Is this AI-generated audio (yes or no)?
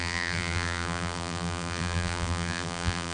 yes